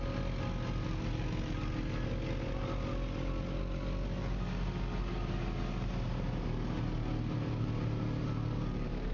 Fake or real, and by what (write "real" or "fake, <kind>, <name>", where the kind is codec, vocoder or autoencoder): real